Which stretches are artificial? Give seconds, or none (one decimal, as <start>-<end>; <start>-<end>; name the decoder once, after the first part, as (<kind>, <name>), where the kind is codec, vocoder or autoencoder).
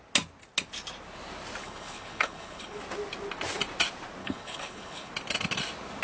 1.6-2.8 (codec, HILCodec); 4.2-5.1